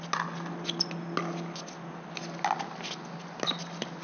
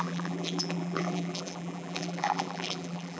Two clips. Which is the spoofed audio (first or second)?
second